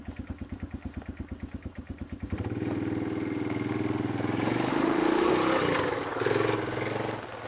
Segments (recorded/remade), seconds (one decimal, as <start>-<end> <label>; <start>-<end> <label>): 0.0-4.7 recorded; 4.7-5.3 remade; 5.3-7.5 recorded